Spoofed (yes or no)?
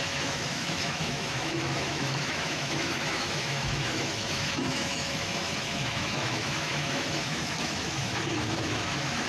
yes